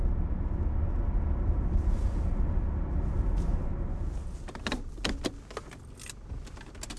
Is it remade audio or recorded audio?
recorded